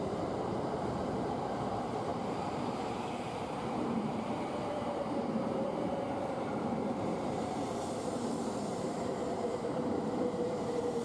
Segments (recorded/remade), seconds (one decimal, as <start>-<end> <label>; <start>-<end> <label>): 0.0-11.0 remade